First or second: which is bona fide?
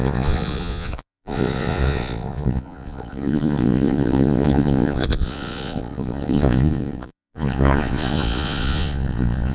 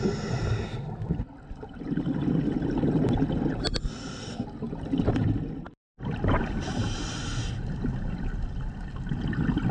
second